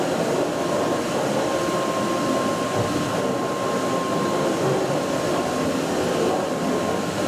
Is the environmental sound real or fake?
real